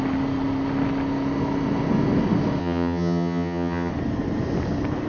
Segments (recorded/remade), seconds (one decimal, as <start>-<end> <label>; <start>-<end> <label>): 0.0-2.6 recorded; 2.6-3.9 remade; 3.9-5.1 recorded